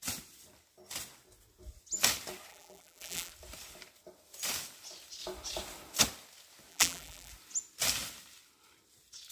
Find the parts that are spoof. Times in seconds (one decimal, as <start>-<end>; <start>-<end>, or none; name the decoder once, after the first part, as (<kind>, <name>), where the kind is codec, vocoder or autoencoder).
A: 2.5-3.3 (vocoder, BigVGAN v2); 6.7-7.3